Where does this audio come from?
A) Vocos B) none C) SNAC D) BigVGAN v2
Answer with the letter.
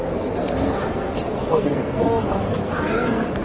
C